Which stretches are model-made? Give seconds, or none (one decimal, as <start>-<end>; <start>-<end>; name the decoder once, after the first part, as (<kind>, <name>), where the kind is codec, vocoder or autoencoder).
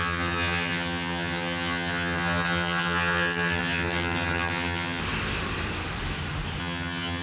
0.0-5.0 (vocoder, HiFi-GAN); 6.6-7.2